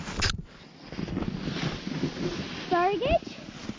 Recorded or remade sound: recorded